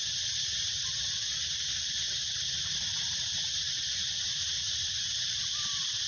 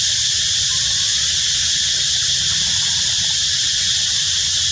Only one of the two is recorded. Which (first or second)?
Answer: second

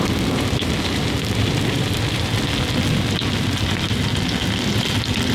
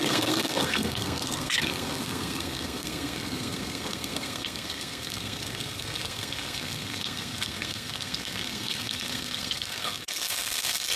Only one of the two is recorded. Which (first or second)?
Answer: first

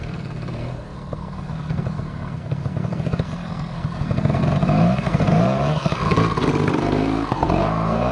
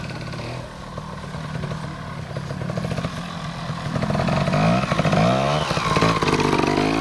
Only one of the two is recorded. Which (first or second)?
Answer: second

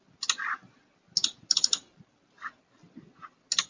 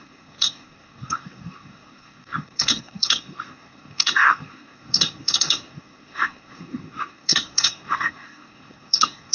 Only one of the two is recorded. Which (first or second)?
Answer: first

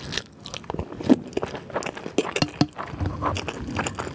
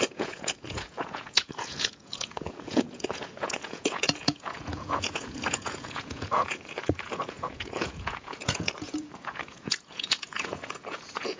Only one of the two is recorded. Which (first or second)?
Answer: first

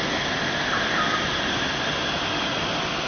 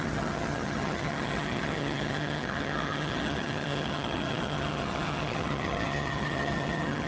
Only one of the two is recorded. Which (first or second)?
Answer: first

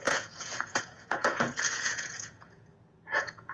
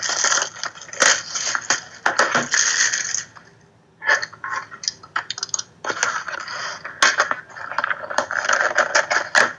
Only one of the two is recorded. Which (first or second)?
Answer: second